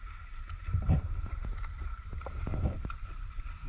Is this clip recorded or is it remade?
recorded